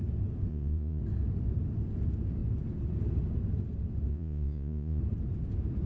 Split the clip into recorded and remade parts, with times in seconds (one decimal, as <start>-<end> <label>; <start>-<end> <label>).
0.0-0.5 recorded; 0.5-1.0 remade; 1.0-4.1 recorded; 4.1-5.0 remade; 5.0-5.9 recorded